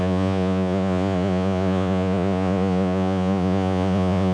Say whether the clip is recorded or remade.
remade